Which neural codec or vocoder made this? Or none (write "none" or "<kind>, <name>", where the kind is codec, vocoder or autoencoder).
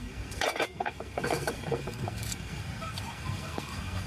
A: codec, SNAC